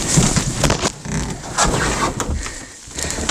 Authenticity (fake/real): real